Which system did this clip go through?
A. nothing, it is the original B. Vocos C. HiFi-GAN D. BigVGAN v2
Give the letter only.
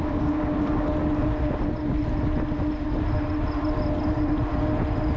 A